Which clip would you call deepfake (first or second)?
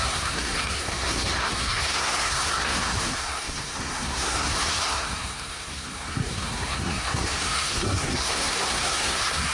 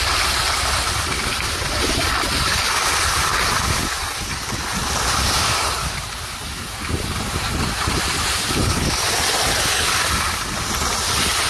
first